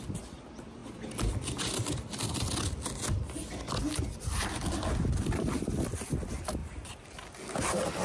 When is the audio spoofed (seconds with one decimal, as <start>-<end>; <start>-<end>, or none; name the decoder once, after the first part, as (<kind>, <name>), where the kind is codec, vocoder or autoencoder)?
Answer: none